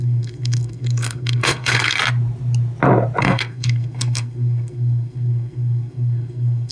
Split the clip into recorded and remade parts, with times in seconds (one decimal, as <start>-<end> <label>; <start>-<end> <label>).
0.0-2.0 remade; 2.0-3.2 recorded; 3.2-6.7 remade